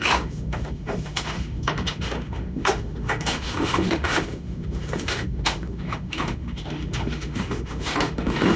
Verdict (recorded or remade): remade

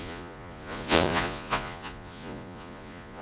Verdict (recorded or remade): remade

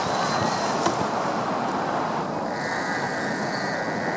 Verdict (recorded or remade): recorded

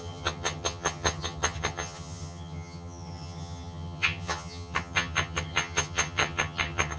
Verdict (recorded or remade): remade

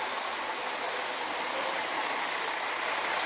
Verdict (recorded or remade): recorded